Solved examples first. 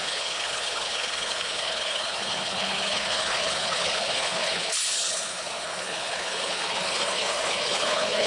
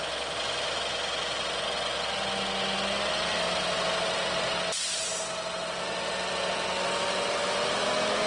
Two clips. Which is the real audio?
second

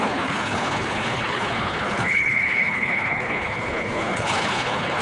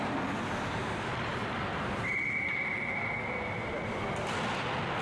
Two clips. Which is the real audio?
second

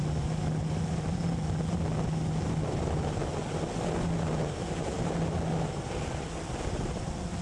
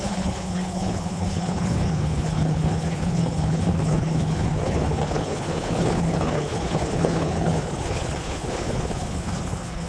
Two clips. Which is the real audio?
first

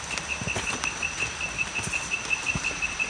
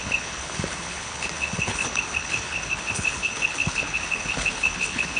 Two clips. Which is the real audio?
first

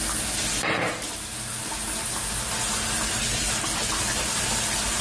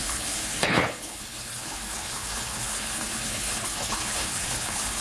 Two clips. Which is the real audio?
first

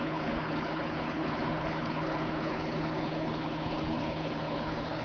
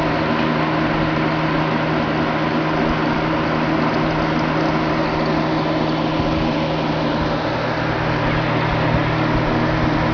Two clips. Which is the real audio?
second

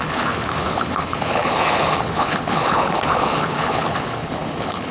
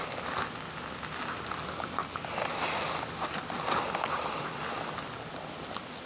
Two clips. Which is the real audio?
second